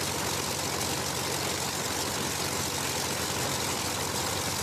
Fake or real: real